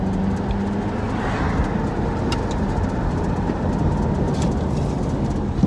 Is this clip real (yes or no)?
yes